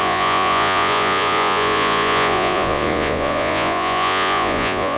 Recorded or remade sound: remade